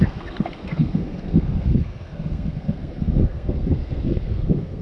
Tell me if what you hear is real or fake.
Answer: fake